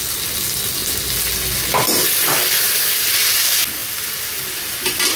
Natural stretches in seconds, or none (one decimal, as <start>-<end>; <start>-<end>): 0.0-5.2